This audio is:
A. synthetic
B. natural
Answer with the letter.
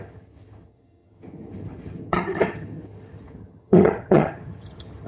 A